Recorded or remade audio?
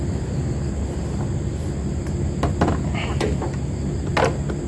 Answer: recorded